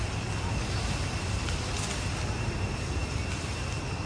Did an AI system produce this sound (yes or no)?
no